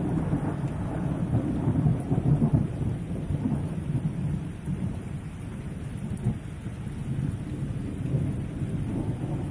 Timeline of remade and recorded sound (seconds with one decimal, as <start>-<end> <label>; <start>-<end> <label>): 0.0-1.9 recorded; 1.9-5.9 remade; 5.9-9.5 recorded